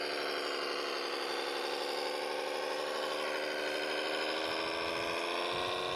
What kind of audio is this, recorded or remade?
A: recorded